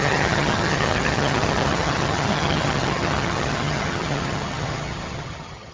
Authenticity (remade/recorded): remade